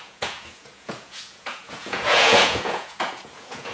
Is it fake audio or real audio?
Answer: fake